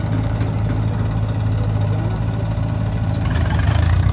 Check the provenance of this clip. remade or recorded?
recorded